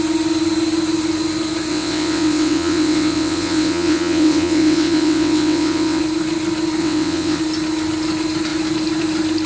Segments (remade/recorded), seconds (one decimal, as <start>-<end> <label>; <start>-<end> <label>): 0.0-1.7 recorded; 1.7-6.0 remade; 6.0-6.8 recorded; 6.8-7.4 remade; 7.4-9.5 recorded